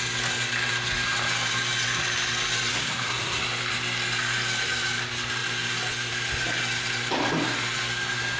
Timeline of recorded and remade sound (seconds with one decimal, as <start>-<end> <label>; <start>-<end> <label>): 0.0-2.7 recorded; 2.7-3.4 remade; 3.4-8.4 recorded